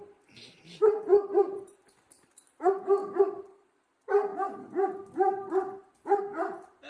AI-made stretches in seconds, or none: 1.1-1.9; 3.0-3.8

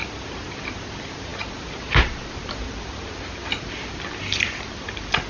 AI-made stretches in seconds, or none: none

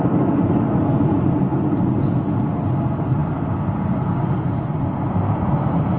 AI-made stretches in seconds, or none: none

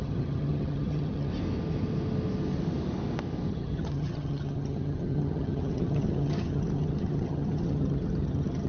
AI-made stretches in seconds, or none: 0.0-1.3; 3.5-8.7

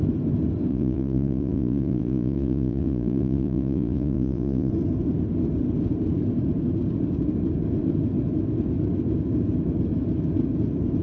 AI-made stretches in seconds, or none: 0.7-4.7